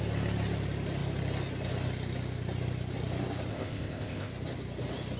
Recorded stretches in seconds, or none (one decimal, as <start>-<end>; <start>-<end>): 0.0-3.5; 4.3-5.2